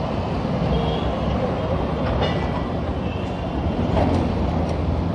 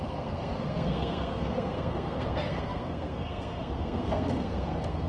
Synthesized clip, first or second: second